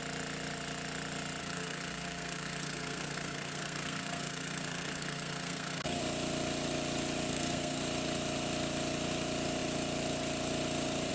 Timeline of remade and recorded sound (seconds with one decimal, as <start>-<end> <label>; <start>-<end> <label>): 0.0-1.4 recorded; 1.4-6.0 remade; 6.0-7.3 recorded; 7.3-7.8 remade; 7.8-11.1 recorded